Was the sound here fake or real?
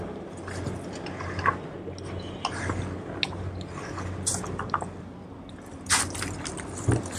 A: real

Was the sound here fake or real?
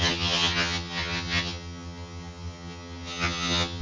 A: fake